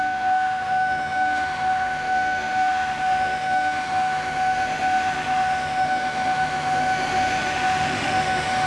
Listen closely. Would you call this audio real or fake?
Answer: fake